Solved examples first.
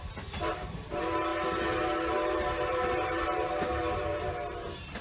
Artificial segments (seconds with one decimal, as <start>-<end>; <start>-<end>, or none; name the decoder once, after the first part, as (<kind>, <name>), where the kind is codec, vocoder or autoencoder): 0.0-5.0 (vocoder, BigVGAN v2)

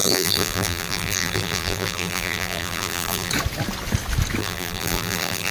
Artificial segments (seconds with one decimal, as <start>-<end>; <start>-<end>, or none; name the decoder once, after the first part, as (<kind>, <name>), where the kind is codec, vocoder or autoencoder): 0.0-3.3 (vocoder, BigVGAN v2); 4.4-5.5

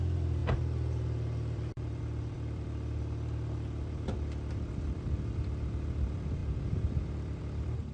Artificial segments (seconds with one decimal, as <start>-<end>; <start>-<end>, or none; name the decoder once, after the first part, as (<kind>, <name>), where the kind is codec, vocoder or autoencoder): 0.0-7.9 (vocoder, BigVGAN v2)

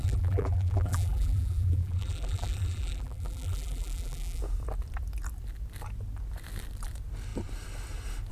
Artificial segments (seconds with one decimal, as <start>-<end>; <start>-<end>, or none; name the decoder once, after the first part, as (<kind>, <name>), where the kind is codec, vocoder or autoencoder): 0.0-4.4 (vocoder, BigVGAN v2)